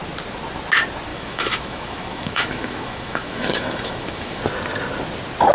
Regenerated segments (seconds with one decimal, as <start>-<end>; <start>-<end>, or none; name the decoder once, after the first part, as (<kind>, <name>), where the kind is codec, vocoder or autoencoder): 1.1-4.4 (autoencoder, DAC-VAE)

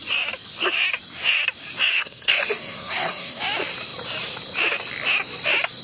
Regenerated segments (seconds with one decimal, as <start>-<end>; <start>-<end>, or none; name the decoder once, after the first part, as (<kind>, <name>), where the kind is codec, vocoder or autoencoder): 1.9-3.4 (codec, SNAC)

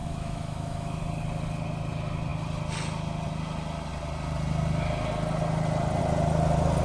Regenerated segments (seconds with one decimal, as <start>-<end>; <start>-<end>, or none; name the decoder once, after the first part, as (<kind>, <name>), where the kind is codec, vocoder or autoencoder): 0.0-1.0 (autoencoder, DAC-VAE)

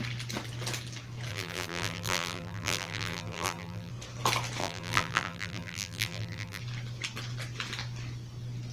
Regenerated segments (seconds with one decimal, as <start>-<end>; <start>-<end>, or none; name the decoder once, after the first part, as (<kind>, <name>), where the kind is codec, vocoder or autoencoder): 1.3-3.9 (vocoder, BigVGAN v2); 4.6-6.6

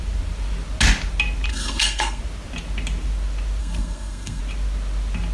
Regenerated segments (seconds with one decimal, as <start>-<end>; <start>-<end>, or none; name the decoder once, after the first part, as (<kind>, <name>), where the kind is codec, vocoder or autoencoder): 1.5-2.2 (codec, SNAC); 3.6-4.4

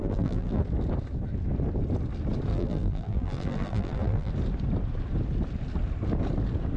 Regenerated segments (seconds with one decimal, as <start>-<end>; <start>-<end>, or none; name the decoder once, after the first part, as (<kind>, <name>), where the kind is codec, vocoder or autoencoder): 0.0-0.6 (vocoder, BigVGAN v2); 2.5-4.3

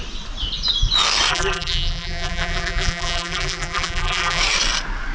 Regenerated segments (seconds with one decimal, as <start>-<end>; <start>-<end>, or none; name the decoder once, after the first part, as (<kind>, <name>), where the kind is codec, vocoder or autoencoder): 1.3-4.4 (vocoder, BigVGAN v2)

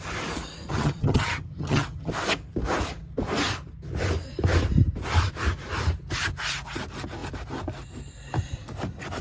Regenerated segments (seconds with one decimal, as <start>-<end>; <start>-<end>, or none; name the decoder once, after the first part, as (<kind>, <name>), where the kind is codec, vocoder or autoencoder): 0.7-2.1 (vocoder, HiFi-GAN)